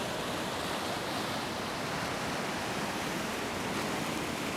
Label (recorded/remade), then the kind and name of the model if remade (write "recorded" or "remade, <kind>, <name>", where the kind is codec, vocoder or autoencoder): recorded